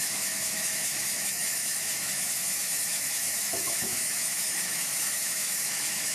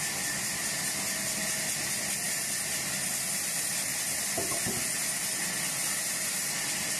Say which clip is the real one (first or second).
second